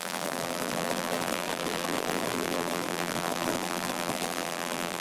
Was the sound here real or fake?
fake